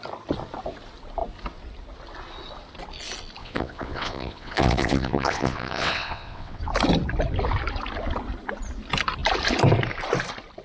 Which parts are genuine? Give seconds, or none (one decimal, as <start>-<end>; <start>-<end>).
0.0-3.4; 6.6-10.6